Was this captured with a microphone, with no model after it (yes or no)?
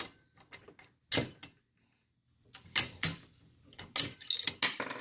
yes